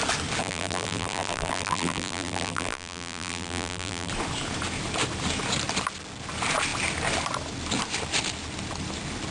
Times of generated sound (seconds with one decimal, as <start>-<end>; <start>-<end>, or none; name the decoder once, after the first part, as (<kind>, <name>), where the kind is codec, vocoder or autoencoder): 0.4-4.1 (vocoder, BigVGAN v2)